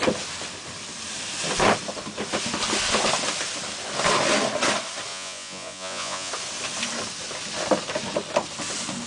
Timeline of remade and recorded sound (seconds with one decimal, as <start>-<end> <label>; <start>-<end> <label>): 0.0-5.1 recorded; 5.1-6.3 remade; 6.3-9.1 recorded